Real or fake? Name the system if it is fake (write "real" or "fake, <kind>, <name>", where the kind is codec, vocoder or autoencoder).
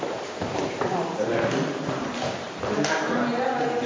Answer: fake, vocoder, BigVGAN v2